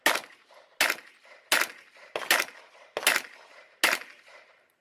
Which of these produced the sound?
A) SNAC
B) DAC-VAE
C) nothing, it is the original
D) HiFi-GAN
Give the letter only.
C